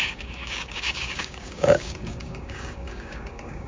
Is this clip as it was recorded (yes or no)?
no